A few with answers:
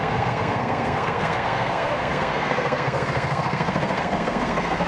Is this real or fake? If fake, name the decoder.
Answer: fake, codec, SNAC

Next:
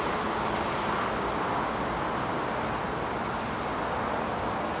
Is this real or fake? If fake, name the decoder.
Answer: real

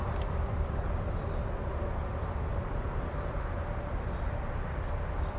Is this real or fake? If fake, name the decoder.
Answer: real